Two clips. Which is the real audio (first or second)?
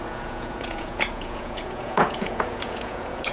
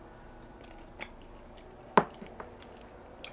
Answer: second